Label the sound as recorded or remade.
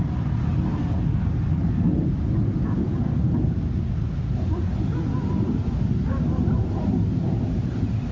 recorded